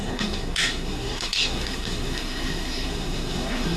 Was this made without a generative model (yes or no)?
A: no